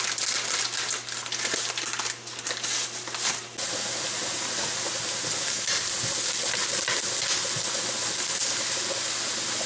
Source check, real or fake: real